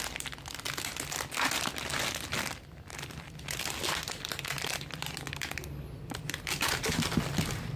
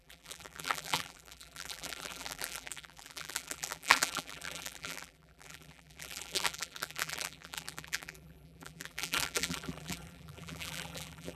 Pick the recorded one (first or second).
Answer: first